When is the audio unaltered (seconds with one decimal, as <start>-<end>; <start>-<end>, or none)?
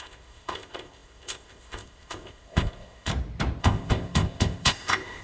3.1-3.6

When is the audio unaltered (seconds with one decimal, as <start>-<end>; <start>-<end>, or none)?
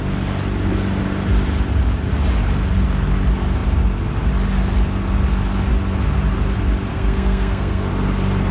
0.0-6.9; 7.9-8.5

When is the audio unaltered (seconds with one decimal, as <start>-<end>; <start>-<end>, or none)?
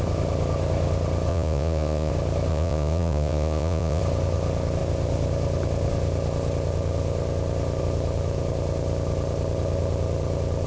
0.0-1.3; 2.1-2.5; 4.0-10.7